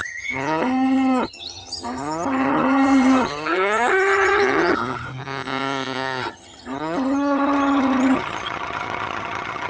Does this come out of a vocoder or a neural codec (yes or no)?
yes